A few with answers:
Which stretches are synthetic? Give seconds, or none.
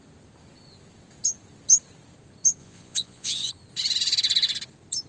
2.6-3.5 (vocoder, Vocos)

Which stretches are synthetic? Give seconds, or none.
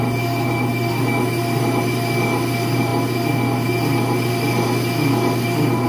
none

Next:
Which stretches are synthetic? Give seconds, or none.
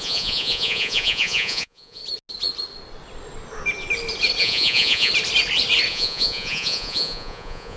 0.0-2.0 (vocoder, Vocos); 4.4-5.1; 5.9-7.8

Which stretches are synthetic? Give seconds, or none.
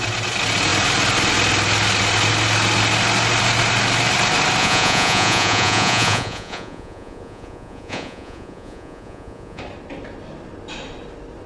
4.6-9.6 (vocoder, Vocos)